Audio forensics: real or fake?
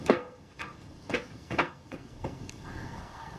fake